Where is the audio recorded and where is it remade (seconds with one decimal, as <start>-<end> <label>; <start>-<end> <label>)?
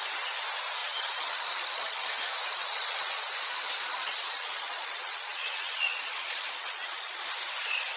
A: 0.0-0.8 recorded; 0.8-2.1 remade; 2.1-2.6 recorded; 2.6-3.2 remade; 3.2-3.9 recorded; 3.9-7.3 remade; 7.3-8.0 recorded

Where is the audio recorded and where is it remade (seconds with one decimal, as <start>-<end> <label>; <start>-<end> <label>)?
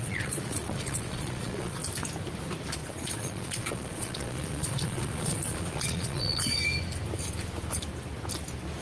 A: 0.0-1.8 remade; 1.8-2.9 recorded; 2.9-6.5 remade; 6.5-8.8 recorded